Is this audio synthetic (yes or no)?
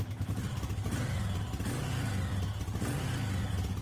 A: no